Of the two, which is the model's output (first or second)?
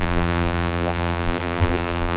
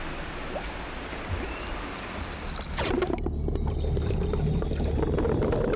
first